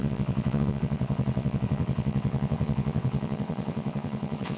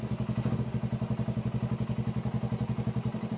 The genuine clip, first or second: second